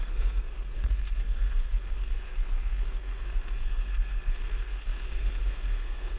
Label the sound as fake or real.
fake